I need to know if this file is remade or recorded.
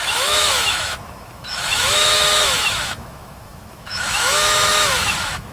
remade